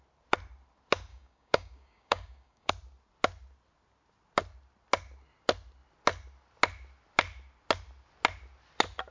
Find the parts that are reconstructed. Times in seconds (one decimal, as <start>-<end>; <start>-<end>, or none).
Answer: 1.1-2.7